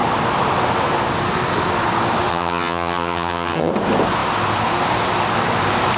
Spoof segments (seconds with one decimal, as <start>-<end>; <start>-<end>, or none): 2.3-3.7